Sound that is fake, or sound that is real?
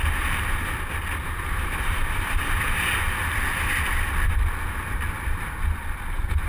fake